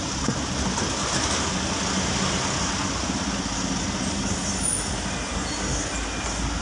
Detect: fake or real real